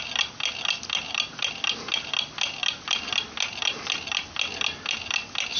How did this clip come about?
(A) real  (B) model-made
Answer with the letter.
A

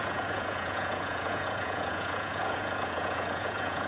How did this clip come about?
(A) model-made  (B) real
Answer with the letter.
A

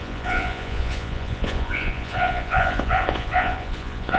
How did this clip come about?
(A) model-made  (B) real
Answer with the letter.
A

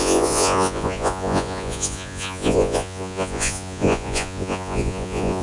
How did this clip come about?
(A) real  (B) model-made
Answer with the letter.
B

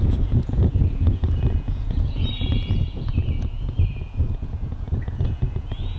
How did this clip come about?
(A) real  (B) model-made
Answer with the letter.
B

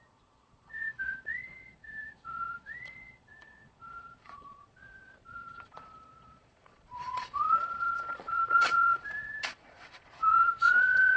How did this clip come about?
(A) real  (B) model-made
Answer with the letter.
B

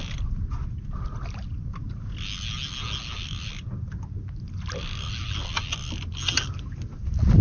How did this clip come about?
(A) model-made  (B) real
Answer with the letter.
B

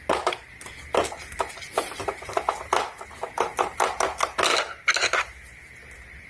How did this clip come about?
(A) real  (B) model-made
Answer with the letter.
A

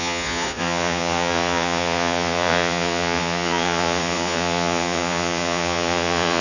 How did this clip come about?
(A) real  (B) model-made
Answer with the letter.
B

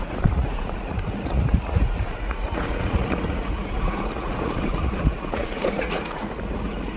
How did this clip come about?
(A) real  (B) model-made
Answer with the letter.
B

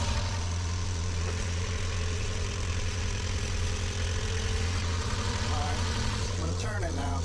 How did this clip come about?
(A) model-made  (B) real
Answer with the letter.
A